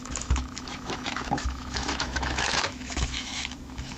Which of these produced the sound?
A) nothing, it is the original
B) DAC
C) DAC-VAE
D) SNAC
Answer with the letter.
C